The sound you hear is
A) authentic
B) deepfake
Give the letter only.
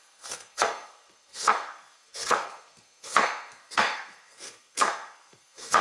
B